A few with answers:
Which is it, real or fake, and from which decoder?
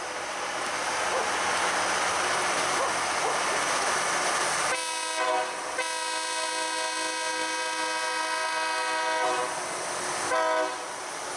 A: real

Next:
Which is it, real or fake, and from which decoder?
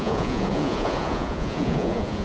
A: fake, vocoder, Vocos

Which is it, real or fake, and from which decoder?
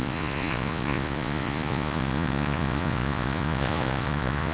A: fake, vocoder, Vocos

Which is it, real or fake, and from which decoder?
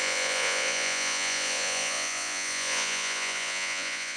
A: fake, vocoder, Vocos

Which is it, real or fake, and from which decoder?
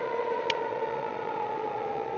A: fake, vocoder, Vocos